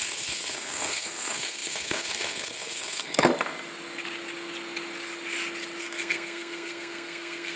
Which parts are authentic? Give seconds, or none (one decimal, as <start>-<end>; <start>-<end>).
3.3-5.8